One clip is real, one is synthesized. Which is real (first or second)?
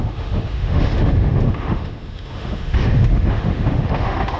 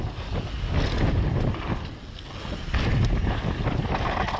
second